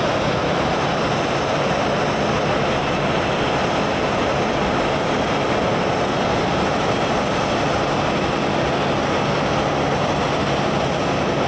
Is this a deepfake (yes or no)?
no